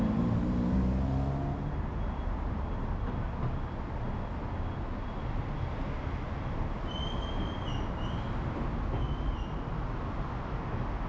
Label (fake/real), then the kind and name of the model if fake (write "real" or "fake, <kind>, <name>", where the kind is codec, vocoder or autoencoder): real